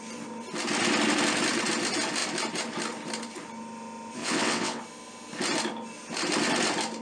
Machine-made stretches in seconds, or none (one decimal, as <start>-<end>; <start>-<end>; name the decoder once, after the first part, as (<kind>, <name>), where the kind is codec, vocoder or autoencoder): 4.2-4.8 (vocoder, WaveNeXt)